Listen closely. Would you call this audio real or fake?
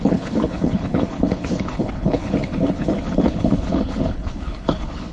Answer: fake